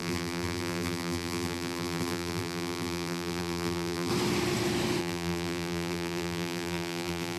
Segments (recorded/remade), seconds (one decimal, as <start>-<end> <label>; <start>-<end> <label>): 0.0-4.1 remade; 4.1-5.0 recorded; 5.0-7.4 remade